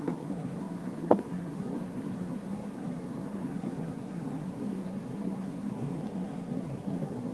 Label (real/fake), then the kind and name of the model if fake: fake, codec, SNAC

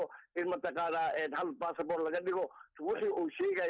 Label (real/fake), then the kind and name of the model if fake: real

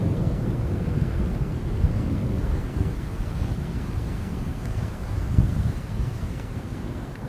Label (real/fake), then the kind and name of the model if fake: fake, codec, SNAC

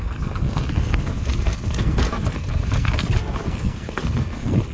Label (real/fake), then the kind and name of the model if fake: fake, codec, SNAC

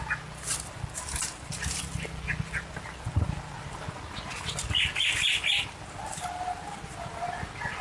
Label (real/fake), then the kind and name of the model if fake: real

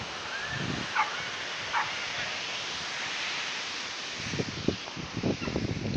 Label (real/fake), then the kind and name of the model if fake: real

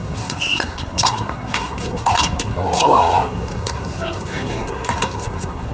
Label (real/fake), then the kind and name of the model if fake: fake, codec, SNAC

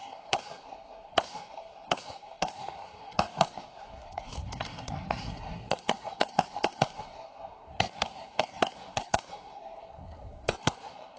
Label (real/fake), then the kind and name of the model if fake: fake, codec, SNAC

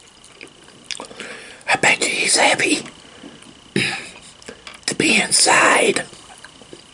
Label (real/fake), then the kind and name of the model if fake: real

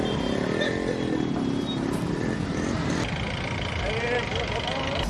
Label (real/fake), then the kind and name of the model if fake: real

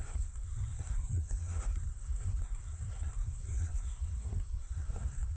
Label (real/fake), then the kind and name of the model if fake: fake, codec, SNAC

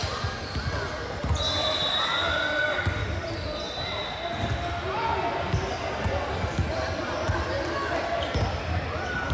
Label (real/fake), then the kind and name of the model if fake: real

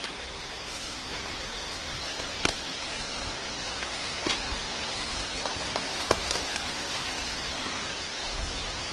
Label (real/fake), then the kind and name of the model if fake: fake, codec, SNAC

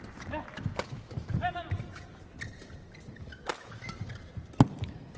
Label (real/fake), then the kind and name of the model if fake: real